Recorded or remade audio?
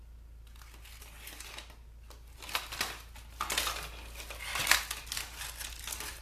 recorded